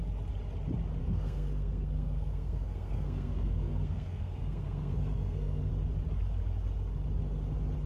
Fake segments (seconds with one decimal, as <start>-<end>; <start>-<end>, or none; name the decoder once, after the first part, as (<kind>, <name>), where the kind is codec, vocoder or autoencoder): 1.0-5.7 (codec, SNAC)